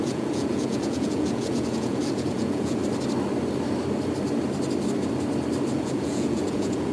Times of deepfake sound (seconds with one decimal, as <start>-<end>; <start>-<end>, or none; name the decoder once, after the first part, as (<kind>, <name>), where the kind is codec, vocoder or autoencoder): 0.0-2.8 (vocoder, Vocos); 5.7-6.9